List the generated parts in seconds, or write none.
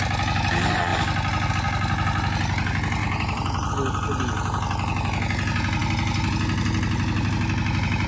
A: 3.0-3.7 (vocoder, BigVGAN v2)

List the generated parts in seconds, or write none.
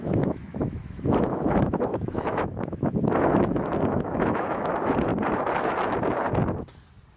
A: 0.0-5.1 (autoencoder, DAC-VAE)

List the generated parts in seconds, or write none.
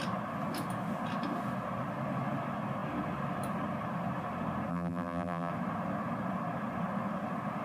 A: 4.7-5.5 (vocoder, BigVGAN v2)